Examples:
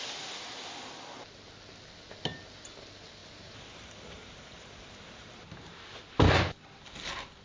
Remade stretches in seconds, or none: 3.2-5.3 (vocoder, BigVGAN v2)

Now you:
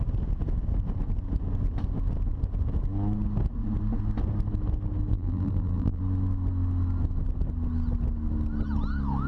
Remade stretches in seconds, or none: 5.1-6.0 (vocoder, BigVGAN v2)